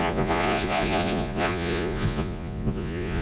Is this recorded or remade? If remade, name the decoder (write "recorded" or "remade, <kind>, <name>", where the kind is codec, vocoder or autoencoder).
remade, vocoder, Vocos